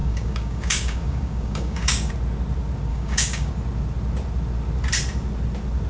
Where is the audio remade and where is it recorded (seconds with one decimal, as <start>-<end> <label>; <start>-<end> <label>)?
0.0-2.1 remade; 2.1-2.9 recorded; 2.9-3.5 remade; 3.5-5.9 recorded